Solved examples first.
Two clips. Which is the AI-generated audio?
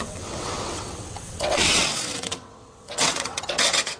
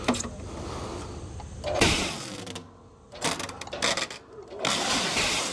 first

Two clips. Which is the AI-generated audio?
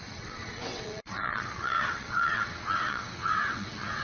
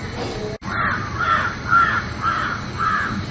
first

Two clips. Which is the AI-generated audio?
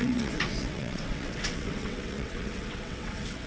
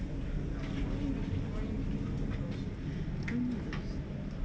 first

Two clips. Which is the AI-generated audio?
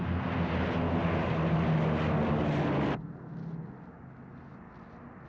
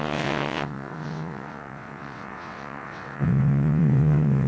second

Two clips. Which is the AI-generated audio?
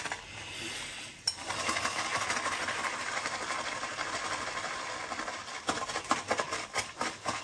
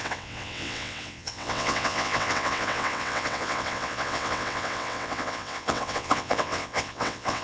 second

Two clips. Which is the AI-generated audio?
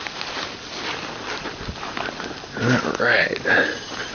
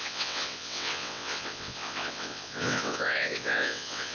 second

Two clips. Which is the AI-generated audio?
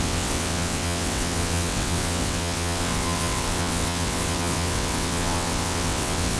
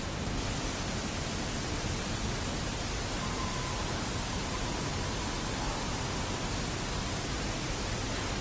first